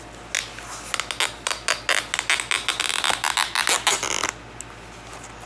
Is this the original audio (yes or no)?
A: yes